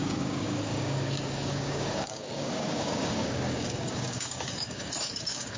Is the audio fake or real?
fake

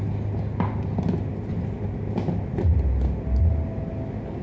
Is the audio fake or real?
real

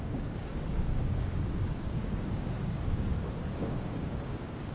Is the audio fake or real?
fake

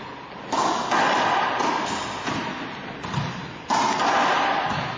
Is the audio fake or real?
real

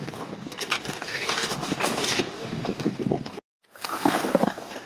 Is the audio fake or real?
fake